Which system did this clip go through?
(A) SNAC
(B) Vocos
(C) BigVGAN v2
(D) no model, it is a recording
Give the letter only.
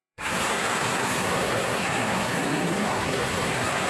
A